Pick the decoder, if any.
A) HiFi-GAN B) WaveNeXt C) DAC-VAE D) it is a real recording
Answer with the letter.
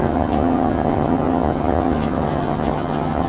A